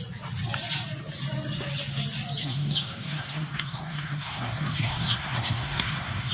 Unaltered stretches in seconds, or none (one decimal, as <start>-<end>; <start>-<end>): 0.0-2.4